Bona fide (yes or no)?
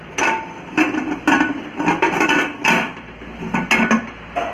yes